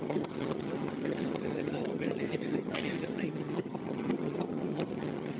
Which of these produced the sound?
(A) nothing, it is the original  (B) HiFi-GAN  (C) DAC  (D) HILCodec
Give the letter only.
B